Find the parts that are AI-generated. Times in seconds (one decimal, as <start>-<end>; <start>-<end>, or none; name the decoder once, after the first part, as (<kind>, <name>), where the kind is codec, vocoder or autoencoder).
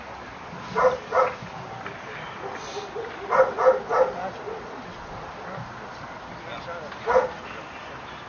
none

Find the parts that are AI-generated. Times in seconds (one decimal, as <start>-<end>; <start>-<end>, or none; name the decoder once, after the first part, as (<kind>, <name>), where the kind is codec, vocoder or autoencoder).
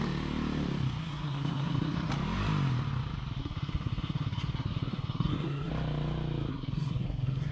1.0-2.1 (codec, SNAC); 3.4-5.7; 6.5-7.5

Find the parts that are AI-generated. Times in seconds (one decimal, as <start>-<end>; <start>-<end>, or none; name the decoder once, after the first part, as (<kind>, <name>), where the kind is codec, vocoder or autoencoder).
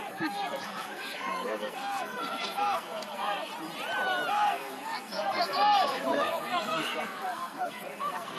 0.0-3.5 (codec, SNAC); 4.3-8.4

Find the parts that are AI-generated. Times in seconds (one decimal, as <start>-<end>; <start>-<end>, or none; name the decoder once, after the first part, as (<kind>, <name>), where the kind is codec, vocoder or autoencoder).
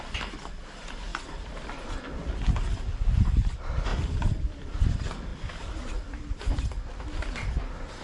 1.1-1.9 (vocoder, BigVGAN v2); 3.9-4.8; 5.3-6.4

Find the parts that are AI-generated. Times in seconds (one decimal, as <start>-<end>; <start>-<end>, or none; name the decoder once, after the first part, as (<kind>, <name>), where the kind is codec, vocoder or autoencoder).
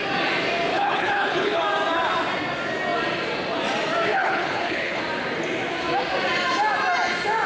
0.7-1.6 (codec, HILCodec); 4.1-5.0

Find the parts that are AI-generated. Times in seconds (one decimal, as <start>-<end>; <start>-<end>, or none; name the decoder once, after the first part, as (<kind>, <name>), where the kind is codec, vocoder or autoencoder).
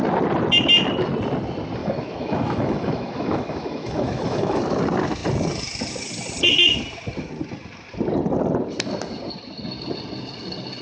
1.8-4.6 (autoencoder, DAC-VAE)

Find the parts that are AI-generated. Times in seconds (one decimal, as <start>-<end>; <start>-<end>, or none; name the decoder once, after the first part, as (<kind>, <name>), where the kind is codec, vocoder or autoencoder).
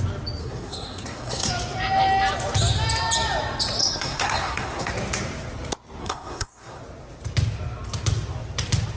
0.4-1.5 (codec, SNAC); 3.8-4.9; 6.0-6.8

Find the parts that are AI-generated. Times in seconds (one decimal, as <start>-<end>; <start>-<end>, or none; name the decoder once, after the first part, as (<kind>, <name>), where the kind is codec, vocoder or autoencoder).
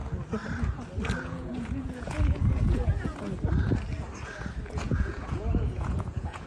1.2-3.1 (vocoder, Vocos); 4.7-6.5